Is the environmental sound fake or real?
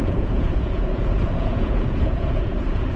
fake